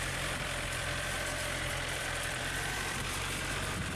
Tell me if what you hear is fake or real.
fake